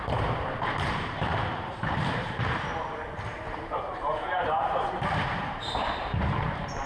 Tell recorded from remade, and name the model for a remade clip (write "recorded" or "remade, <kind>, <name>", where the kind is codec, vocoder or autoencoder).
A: remade, vocoder, BigVGAN v2